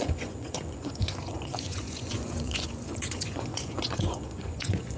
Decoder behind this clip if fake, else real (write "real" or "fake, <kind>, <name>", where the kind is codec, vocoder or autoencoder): fake, vocoder, Vocos